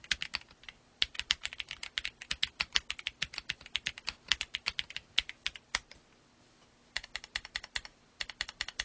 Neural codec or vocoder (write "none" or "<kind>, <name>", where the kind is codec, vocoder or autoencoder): none